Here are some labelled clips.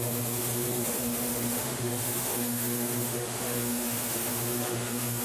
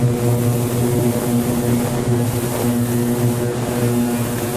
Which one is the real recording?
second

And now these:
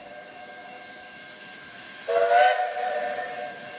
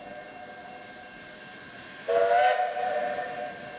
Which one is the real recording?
second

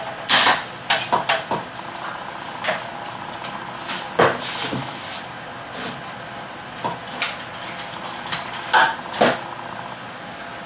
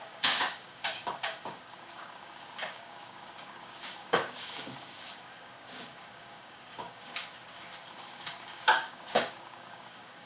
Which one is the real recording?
first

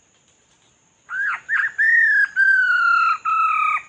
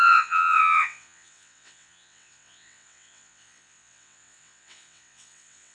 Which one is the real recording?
first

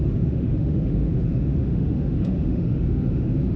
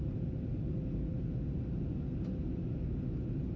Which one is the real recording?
second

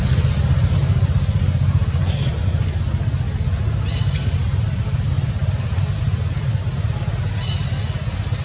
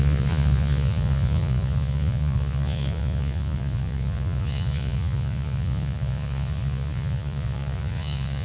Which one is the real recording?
first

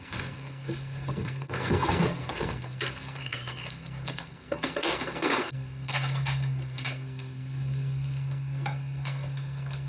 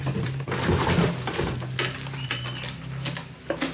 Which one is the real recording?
second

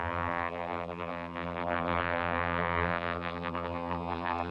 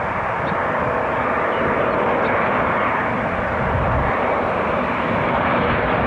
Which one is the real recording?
second